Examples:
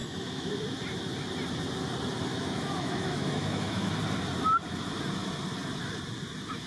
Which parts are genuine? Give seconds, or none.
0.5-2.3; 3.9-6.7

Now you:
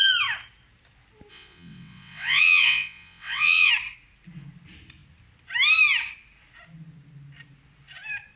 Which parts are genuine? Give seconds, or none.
0.0-1.3; 3.7-8.4